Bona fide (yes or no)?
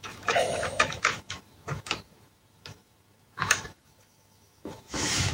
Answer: no